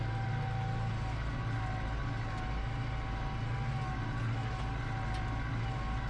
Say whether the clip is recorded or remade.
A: recorded